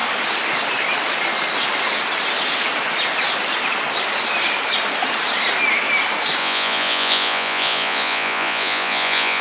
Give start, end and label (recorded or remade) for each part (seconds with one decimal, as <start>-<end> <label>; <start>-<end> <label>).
0.0-6.4 recorded; 6.4-9.4 remade